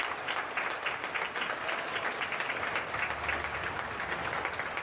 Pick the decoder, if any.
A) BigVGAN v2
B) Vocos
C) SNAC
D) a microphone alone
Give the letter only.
D